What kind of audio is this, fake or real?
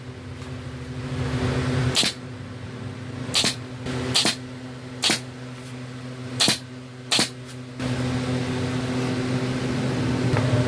real